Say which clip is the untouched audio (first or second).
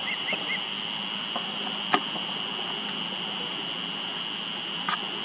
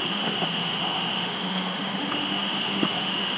first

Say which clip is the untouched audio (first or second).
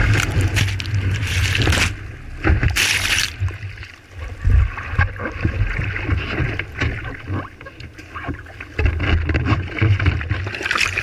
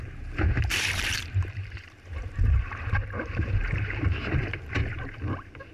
first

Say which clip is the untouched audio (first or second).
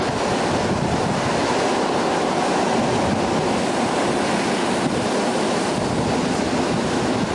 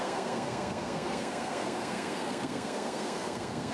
first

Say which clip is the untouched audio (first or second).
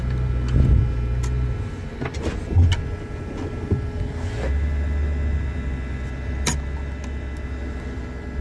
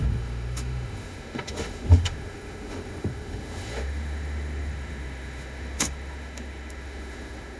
first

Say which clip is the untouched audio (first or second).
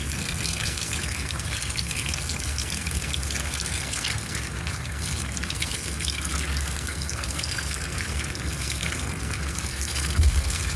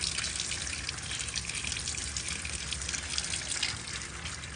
second